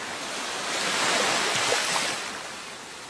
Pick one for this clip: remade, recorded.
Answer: recorded